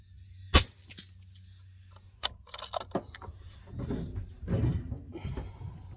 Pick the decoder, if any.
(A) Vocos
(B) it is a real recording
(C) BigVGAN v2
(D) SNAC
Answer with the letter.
B